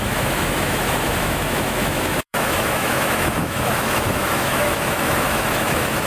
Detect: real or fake fake